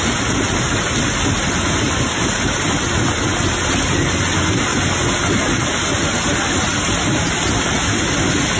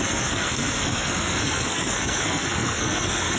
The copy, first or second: second